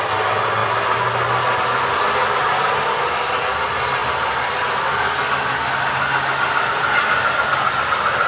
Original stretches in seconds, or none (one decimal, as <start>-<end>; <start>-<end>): 0.0-8.3

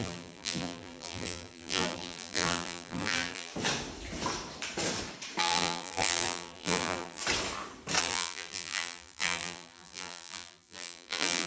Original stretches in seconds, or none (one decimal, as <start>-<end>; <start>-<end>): 3.5-5.4; 7.2-8.0

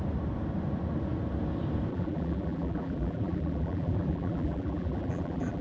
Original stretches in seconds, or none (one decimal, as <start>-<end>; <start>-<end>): 0.0-1.9

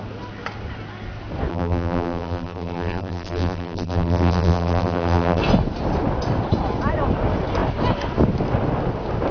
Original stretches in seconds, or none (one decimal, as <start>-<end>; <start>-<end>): 0.0-1.5; 5.4-9.3